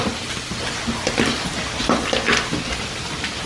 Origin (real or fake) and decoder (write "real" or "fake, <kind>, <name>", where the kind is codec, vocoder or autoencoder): real